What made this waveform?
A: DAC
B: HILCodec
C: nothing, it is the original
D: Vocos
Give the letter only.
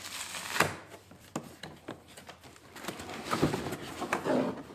C